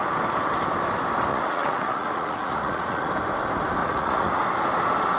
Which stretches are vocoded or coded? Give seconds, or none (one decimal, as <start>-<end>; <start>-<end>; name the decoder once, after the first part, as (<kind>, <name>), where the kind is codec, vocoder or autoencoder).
1.3-3.1 (vocoder, Vocos); 3.8-4.4